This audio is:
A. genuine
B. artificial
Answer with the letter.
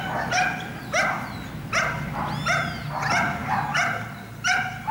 A